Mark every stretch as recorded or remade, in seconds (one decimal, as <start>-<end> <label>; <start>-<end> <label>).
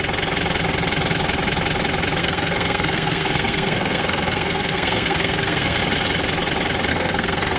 0.0-2.2 recorded; 2.2-5.8 remade; 5.8-6.9 recorded; 6.9-7.6 remade